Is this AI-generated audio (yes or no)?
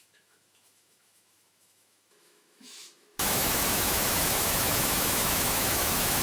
yes